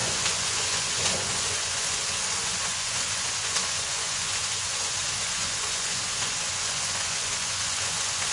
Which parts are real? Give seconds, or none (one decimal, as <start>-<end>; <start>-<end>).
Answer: none